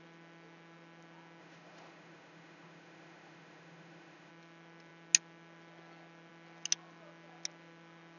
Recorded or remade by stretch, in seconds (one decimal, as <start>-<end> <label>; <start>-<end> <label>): 0.0-1.4 recorded; 1.4-4.3 remade; 4.3-8.2 recorded